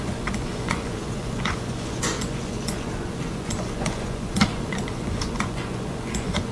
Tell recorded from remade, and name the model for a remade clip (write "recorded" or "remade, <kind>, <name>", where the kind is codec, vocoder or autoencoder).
remade, vocoder, Vocos